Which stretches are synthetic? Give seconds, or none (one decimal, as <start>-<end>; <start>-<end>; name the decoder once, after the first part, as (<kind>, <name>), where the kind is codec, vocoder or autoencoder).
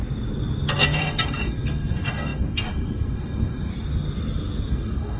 1.0-3.7 (codec, SNAC); 4.7-5.2